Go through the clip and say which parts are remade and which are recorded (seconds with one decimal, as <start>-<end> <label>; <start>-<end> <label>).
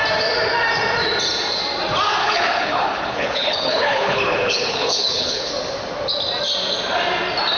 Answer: 0.0-2.2 recorded; 2.2-5.5 remade; 5.5-7.6 recorded